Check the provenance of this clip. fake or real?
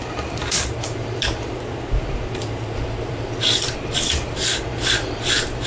fake